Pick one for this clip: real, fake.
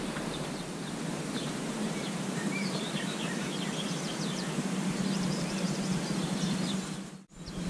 fake